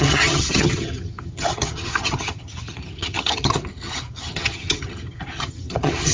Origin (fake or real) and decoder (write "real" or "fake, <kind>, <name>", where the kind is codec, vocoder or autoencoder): fake, vocoder, HiFi-GAN